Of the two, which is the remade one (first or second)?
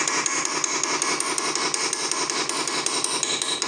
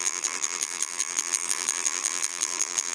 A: second